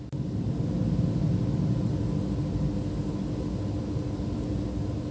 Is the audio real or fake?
real